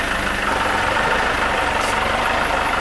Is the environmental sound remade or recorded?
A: recorded